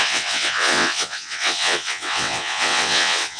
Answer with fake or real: fake